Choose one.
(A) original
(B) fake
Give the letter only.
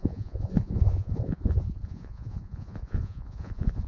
B